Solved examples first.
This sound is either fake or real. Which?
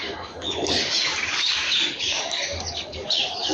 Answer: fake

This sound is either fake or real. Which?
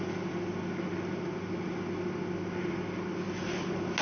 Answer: real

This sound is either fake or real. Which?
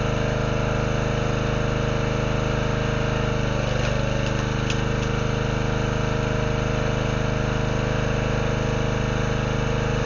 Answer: real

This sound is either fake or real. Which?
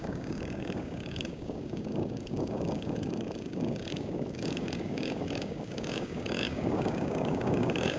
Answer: fake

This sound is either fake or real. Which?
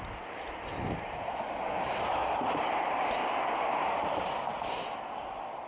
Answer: real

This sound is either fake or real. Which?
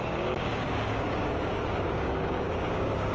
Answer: fake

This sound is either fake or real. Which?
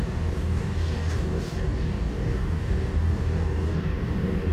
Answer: fake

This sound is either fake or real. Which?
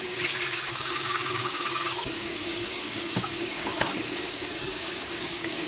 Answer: fake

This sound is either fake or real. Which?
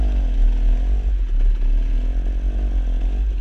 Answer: real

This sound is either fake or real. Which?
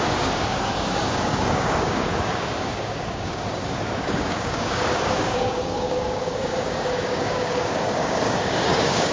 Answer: fake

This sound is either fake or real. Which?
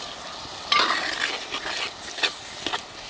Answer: real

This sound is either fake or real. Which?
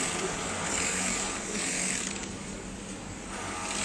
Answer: fake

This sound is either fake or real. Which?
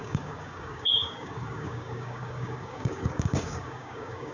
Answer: fake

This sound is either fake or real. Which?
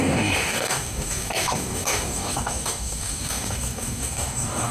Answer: fake